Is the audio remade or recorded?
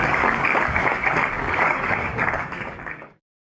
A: remade